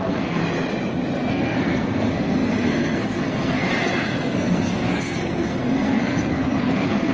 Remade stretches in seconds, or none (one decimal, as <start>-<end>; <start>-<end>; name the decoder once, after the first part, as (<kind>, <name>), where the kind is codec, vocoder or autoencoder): 0.0-0.4 (codec, SNAC); 1.3-7.1